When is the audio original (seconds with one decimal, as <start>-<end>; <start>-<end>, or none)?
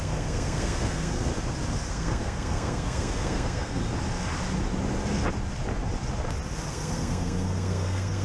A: 1.3-1.9; 3.8-6.7